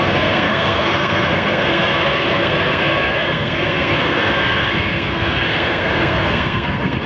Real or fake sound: fake